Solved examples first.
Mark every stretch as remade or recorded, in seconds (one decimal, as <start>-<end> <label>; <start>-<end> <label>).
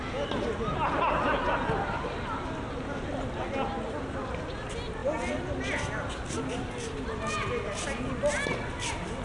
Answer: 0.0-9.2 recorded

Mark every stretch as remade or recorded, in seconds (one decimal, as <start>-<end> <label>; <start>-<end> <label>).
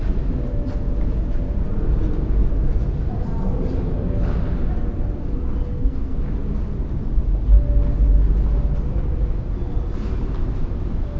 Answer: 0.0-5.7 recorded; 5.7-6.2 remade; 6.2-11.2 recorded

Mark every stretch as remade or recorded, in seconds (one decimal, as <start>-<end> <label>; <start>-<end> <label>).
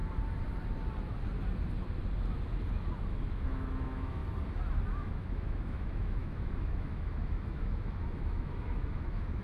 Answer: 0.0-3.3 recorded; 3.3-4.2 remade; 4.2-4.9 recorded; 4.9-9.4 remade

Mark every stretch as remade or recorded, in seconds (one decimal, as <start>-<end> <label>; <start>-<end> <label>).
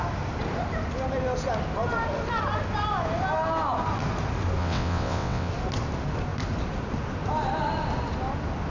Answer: 0.0-4.6 recorded; 4.6-5.5 remade; 5.5-8.7 recorded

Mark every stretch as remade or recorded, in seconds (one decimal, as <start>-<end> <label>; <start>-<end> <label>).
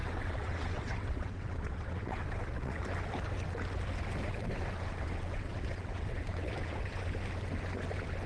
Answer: 0.0-2.8 remade; 2.8-4.3 recorded; 4.3-7.0 remade; 7.0-8.3 recorded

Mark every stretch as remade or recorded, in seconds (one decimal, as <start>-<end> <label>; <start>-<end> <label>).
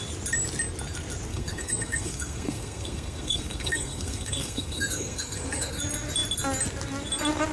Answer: 0.0-1.3 recorded; 1.3-5.8 remade; 5.8-7.5 recorded